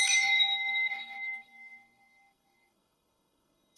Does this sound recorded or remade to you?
remade